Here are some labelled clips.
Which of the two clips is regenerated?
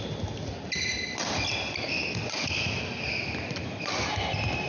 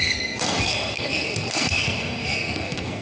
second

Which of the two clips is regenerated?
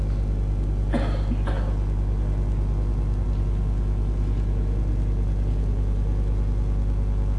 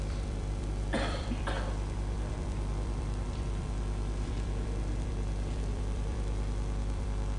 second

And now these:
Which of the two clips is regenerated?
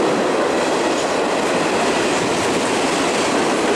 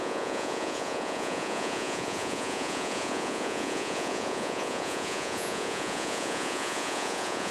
second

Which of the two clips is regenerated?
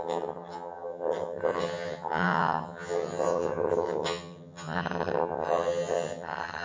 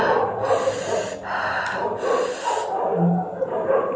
first